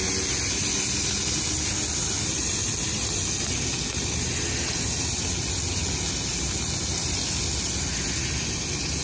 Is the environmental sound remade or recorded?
recorded